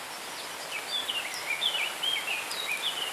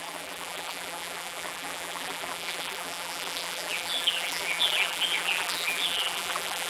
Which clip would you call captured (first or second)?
first